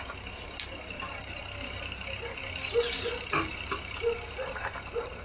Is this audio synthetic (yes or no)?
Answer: no